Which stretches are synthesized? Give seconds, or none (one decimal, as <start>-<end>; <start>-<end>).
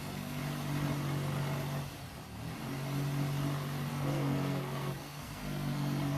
0.0-0.4; 3.9-6.2